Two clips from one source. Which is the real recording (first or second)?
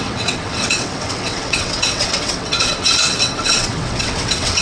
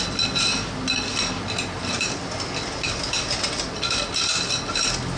second